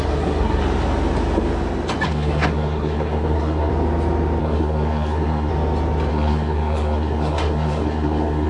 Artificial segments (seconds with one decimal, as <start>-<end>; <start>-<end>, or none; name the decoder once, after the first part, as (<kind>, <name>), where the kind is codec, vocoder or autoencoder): 0.0-0.6 (codec, SNAC); 2.1-3.7; 4.4-5.5; 6.1-8.5